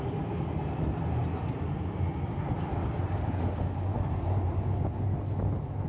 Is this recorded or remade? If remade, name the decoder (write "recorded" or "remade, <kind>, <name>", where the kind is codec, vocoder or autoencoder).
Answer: recorded